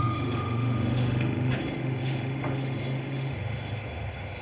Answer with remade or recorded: remade